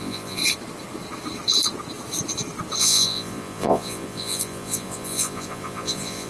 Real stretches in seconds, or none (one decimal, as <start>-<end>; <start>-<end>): 0.4-2.8